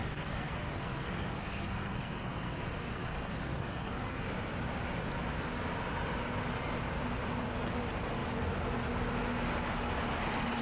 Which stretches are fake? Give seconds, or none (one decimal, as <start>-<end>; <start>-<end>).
0.0-4.3